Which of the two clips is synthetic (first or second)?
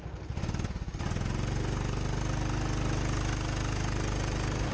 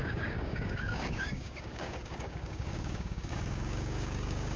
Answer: second